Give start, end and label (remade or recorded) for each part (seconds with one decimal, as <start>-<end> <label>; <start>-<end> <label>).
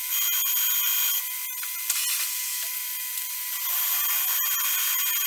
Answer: 0.0-5.3 recorded